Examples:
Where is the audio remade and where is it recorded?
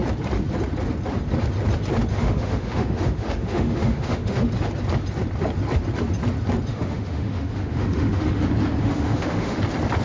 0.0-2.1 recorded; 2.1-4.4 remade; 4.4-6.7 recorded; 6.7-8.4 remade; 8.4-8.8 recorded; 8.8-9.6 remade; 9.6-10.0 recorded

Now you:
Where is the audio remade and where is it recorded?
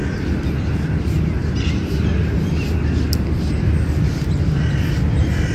0.0-5.5 recorded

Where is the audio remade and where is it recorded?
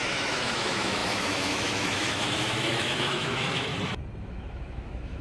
0.0-3.7 remade; 3.7-4.2 recorded; 4.2-5.2 remade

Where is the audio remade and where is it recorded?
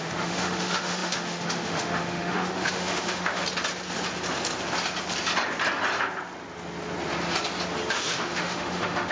0.0-3.4 remade; 3.4-7.9 recorded; 7.9-9.1 remade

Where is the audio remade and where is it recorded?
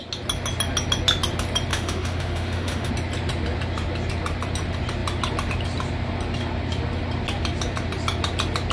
0.0-1.7 recorded; 1.7-2.9 remade; 2.9-8.7 recorded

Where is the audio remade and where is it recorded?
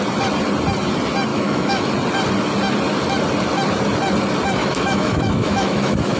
0.0-1.3 recorded; 1.3-1.9 remade; 1.9-4.6 recorded; 4.6-6.2 remade